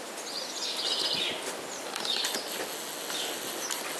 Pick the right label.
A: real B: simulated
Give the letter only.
A